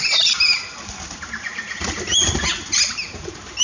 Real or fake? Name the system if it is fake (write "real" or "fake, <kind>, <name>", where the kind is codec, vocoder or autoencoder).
real